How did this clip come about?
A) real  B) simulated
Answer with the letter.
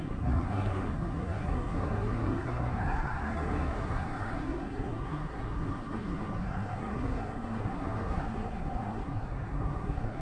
B